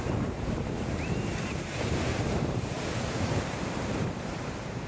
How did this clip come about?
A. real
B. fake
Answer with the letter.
B